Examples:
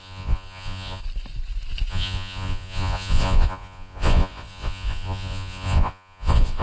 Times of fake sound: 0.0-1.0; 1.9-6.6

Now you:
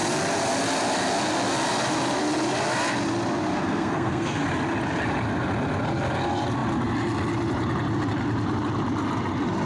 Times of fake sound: 3.5-4.4

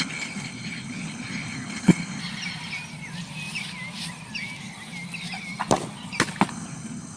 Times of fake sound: 0.0-2.2; 6.5-7.2